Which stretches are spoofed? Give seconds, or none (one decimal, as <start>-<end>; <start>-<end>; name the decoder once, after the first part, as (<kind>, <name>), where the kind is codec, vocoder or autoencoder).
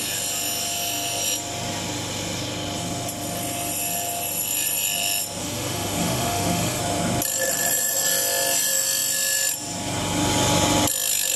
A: 5.4-6.8 (autoencoder, DAC-VAE)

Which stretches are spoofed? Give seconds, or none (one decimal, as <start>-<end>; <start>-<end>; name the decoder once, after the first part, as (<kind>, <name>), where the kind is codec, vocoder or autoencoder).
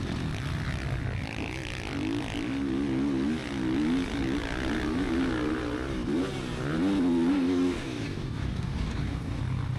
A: 7.3-9.4 (codec, DAC)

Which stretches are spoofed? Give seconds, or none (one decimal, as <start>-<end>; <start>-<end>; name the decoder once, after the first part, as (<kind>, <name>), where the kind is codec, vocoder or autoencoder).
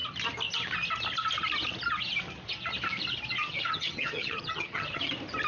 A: 3.4-5.1 (vocoder, HiFi-GAN)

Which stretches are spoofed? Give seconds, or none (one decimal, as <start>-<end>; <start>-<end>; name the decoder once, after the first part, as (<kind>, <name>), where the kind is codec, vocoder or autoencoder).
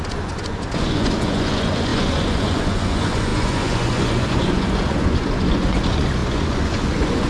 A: 0.0-7.3 (vocoder, Vocos)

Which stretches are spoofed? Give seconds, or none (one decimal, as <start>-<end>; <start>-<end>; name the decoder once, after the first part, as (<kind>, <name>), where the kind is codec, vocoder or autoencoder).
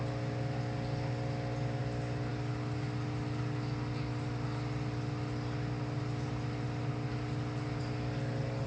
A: none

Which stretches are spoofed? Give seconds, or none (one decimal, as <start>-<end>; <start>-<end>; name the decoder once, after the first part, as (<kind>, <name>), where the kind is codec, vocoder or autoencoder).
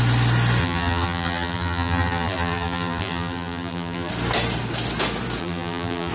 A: 0.6-4.1 (vocoder, BigVGAN v2); 5.4-6.1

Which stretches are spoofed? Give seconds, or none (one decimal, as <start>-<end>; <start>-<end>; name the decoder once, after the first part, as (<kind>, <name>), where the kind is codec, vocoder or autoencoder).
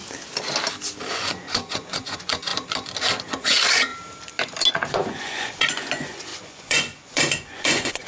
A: 1.1-2.5 (vocoder, Vocos); 3.2-3.9; 4.7-8.1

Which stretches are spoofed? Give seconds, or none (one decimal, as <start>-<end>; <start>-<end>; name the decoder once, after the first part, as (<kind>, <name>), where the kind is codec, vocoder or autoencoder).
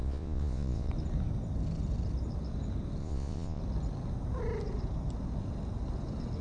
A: 0.0-0.9 (vocoder, Vocos); 3.0-3.6